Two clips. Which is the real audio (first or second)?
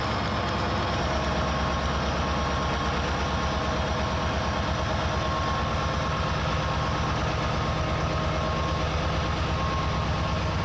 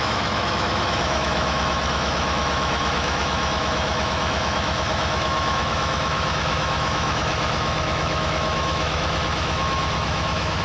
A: first